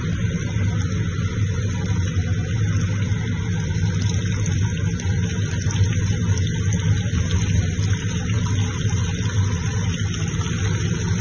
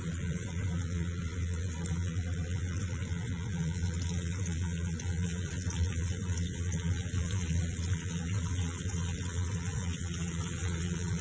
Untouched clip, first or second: first